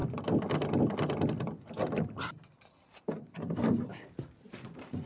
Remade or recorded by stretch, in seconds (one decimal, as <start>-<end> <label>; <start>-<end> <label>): 0.0-5.1 remade